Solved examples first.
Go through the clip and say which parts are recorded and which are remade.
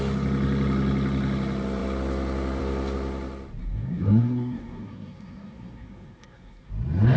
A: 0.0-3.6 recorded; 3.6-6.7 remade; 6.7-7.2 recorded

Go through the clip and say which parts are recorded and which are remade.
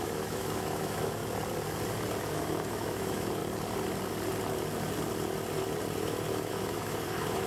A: 0.0-1.2 remade; 1.2-2.2 recorded; 2.2-3.4 remade; 3.4-6.5 recorded; 6.5-7.5 remade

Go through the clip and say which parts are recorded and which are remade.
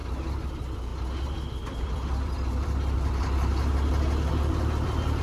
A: 0.0-0.5 recorded; 0.5-0.9 remade; 0.9-1.5 recorded; 1.5-3.5 remade; 3.5-4.3 recorded; 4.3-5.2 remade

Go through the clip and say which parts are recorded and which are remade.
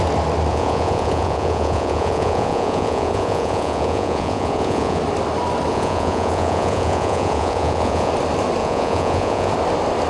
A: 0.0-0.5 recorded; 0.5-5.0 remade; 5.0-5.7 recorded; 5.7-8.1 remade; 8.1-8.6 recorded; 8.6-9.5 remade; 9.5-10.1 recorded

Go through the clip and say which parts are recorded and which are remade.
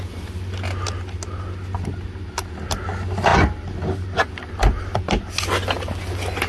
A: 0.0-6.5 recorded